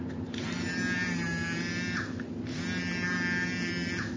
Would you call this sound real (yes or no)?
yes